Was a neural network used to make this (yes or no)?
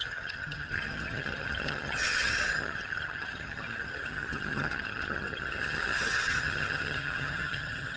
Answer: yes